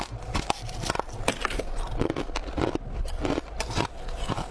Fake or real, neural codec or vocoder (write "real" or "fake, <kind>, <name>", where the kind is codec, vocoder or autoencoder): real